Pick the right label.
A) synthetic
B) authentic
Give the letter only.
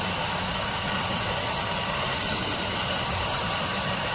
B